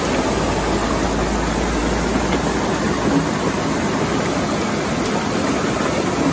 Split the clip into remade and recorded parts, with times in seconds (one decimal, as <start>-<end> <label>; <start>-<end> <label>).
0.0-6.3 recorded